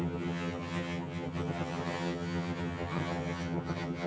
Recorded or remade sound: remade